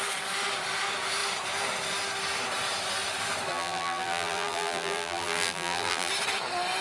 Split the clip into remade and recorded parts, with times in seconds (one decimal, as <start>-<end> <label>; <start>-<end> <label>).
0.0-3.5 recorded; 3.5-6.1 remade; 6.1-6.8 recorded